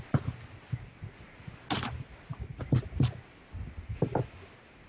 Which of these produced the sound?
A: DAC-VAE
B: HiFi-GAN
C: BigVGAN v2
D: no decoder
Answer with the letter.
D